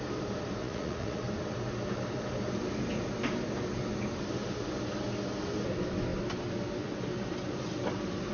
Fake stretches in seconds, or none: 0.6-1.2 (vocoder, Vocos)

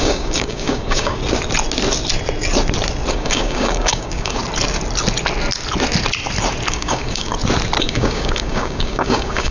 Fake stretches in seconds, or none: 0.0-1.2 (codec, DAC); 3.1-4.4; 6.7-7.3; 7.8-9.5

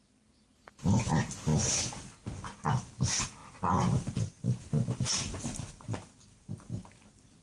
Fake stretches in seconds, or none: none